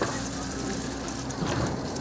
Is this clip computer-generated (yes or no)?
yes